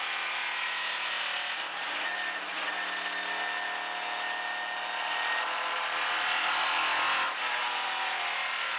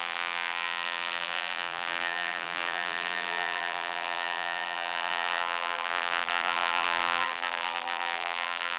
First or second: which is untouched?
first